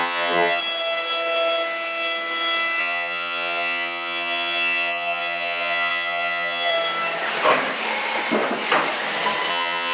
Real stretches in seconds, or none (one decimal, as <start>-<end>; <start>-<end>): 0.6-2.8; 6.7-9.5